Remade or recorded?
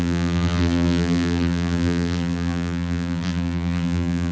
remade